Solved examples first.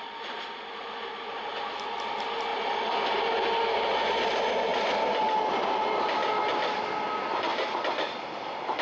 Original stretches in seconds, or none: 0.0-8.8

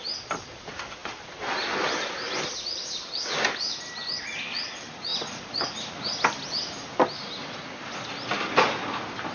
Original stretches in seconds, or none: 0.0-9.3